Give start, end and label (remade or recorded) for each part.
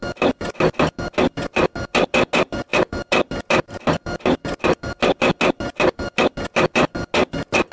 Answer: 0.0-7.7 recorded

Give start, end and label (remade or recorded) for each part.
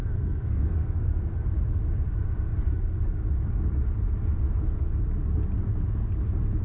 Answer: 0.0-1.3 remade; 1.3-6.6 recorded